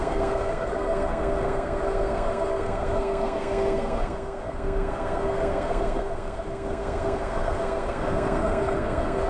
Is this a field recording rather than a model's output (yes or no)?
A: no